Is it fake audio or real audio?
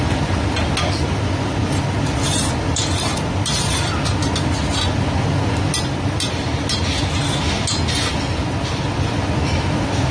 real